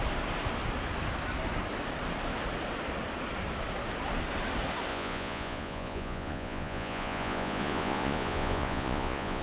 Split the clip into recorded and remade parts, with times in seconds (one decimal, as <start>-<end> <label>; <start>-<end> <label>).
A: 0.0-4.9 recorded; 4.9-9.4 remade